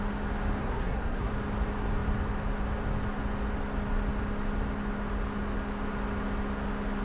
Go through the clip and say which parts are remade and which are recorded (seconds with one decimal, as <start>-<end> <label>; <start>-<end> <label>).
0.0-0.6 recorded; 0.6-1.3 remade; 1.3-7.0 recorded